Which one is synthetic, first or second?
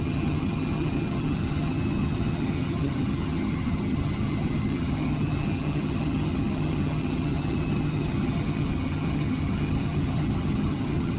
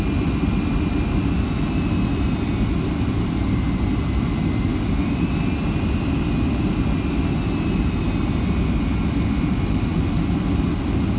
first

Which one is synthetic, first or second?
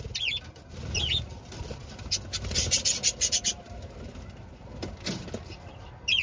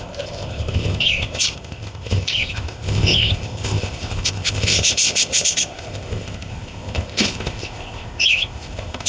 second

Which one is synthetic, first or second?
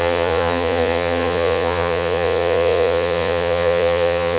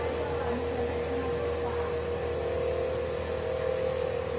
first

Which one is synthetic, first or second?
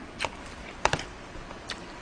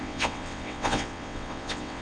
second